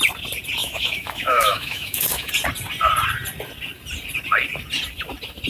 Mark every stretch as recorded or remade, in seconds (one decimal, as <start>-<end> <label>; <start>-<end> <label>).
0.0-0.6 recorded; 0.6-2.3 remade; 2.3-5.5 recorded